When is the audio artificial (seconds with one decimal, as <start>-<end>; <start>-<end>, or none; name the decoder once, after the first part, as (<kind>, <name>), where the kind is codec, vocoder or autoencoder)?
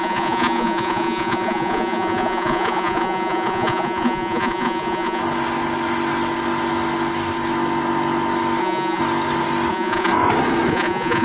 0.0-5.2 (vocoder, Vocos); 8.6-9.0; 9.7-10.1; 10.7-11.2